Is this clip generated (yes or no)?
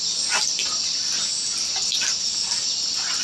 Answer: no